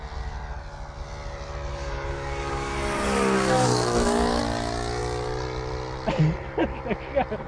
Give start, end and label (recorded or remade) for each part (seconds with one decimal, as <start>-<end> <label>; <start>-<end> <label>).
0.0-1.7 recorded; 1.7-4.4 remade; 4.4-7.5 recorded